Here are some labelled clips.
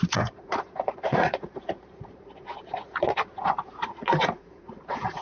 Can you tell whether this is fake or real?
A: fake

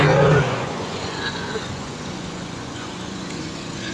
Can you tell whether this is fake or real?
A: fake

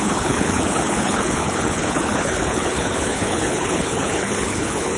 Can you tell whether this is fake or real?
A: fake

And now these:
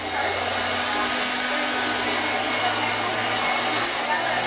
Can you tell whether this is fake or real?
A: real